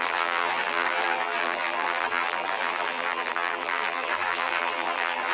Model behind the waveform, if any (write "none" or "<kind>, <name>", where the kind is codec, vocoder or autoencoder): vocoder, BigVGAN v2